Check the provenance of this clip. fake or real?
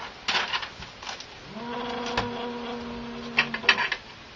real